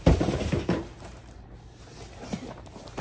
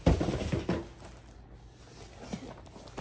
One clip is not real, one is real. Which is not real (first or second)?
first